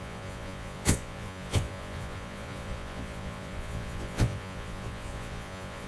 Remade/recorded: remade